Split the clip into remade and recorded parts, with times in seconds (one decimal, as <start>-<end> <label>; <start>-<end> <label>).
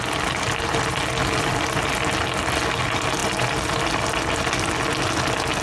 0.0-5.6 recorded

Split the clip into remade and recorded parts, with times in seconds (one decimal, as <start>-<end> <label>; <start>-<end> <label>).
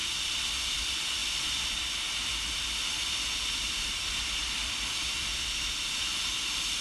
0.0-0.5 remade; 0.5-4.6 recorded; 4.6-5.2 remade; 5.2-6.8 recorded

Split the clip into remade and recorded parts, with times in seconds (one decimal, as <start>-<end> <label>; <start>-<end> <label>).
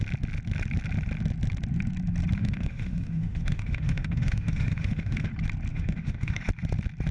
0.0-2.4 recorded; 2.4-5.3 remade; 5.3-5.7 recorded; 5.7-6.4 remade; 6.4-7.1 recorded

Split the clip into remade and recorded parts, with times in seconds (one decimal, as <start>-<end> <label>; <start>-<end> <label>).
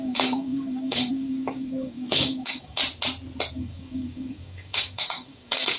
0.0-2.8 remade; 2.8-3.5 recorded; 3.5-5.8 remade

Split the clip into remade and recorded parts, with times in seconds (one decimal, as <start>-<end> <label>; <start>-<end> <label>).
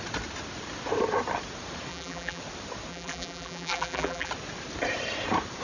0.0-1.9 recorded; 1.9-2.4 remade; 2.4-2.9 recorded; 2.9-4.3 remade; 4.3-5.6 recorded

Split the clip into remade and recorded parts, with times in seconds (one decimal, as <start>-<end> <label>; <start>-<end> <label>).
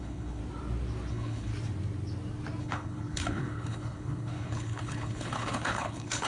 0.0-0.4 remade; 0.4-1.1 recorded; 1.1-1.5 remade; 1.5-2.6 recorded; 2.6-6.3 remade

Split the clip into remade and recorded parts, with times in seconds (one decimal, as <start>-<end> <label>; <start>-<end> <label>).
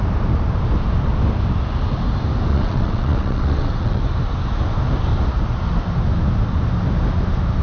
0.0-2.5 recorded; 2.5-4.0 remade; 4.0-7.6 recorded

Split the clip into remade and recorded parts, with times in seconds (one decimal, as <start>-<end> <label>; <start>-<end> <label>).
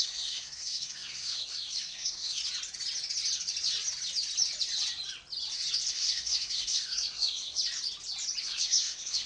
0.0-2.4 remade; 2.4-5.9 recorded; 5.9-7.6 remade; 7.6-8.4 recorded; 8.4-9.3 remade